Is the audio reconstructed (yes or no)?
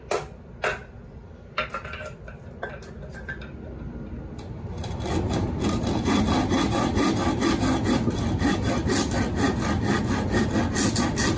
no